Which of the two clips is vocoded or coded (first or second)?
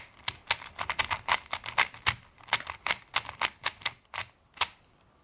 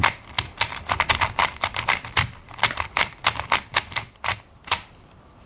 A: second